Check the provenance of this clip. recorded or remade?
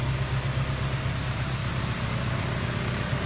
recorded